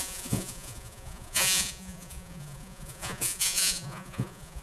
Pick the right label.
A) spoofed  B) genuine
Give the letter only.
A